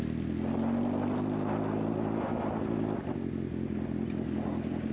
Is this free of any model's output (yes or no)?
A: yes